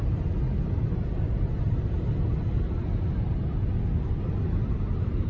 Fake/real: real